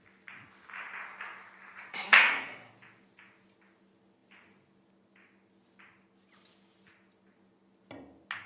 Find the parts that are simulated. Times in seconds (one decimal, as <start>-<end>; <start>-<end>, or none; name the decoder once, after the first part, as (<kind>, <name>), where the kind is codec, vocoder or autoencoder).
1.9-2.7 (codec, SNAC)